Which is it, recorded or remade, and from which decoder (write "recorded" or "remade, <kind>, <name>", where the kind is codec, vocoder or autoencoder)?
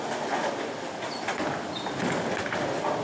recorded